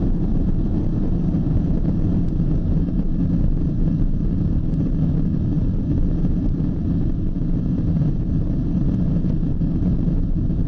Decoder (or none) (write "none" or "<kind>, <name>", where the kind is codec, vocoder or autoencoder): vocoder, BigVGAN v2